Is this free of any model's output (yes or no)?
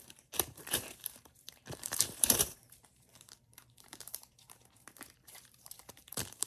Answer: no